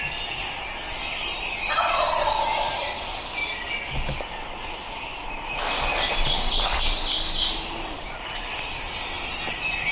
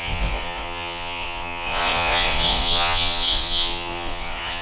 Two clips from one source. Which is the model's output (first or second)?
second